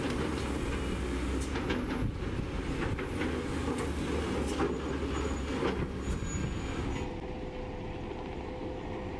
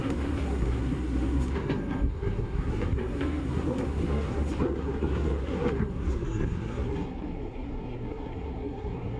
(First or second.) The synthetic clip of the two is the second